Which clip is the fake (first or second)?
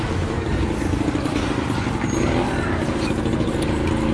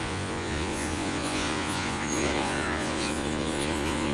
second